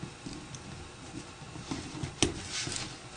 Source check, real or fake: real